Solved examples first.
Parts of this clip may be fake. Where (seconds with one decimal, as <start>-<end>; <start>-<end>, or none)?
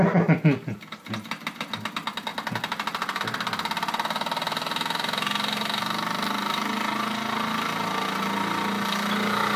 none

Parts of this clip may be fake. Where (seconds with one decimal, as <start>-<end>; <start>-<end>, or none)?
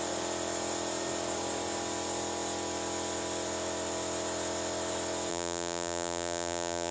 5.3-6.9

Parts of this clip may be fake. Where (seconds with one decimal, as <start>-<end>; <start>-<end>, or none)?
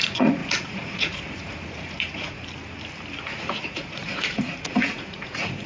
0.0-2.4; 3.2-5.7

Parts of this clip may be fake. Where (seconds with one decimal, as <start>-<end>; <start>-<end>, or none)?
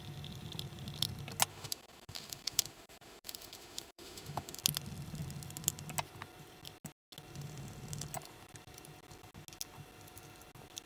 1.5-4.6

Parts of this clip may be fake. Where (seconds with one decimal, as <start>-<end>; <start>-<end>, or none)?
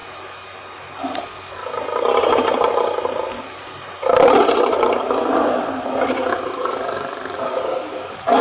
1.2-1.6; 6.6-8.4